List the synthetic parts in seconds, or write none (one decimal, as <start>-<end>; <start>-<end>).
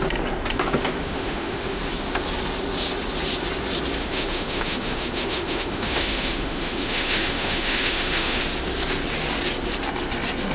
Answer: 1.0-1.8; 4.0-8.4